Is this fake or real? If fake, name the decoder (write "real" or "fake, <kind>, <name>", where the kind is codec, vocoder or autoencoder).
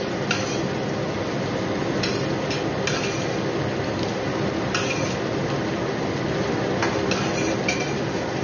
real